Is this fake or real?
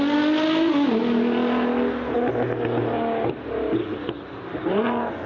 real